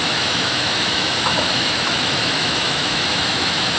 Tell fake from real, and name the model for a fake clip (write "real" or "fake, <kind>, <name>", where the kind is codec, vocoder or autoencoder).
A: fake, autoencoder, DAC-VAE